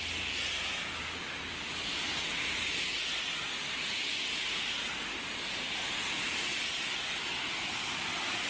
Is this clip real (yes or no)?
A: yes